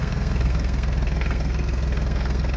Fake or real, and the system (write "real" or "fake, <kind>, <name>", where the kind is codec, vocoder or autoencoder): fake, codec, SNAC